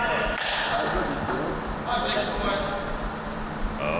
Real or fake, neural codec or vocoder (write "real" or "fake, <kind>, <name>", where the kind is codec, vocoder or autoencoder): real